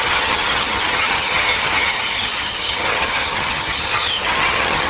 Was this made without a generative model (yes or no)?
no